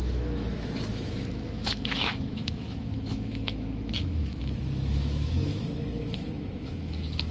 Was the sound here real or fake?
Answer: fake